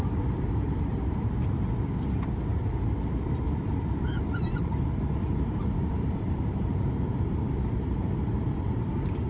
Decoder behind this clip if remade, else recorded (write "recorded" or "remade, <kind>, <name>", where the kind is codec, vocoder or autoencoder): remade, vocoder, BigVGAN v2